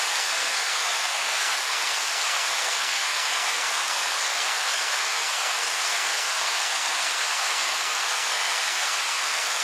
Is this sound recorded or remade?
remade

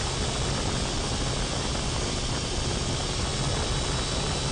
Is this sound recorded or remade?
recorded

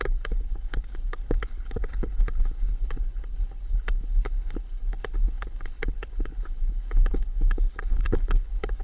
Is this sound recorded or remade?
remade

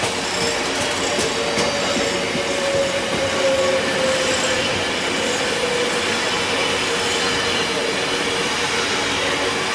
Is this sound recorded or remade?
recorded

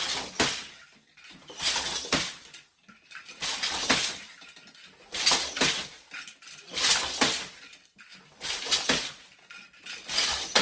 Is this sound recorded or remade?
recorded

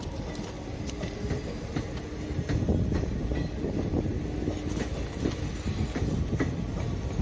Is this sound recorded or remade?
recorded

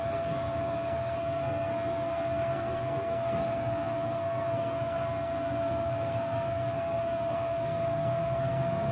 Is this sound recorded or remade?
remade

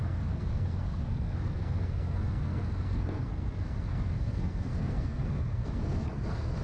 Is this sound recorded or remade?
remade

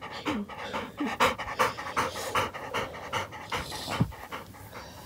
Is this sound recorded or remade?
recorded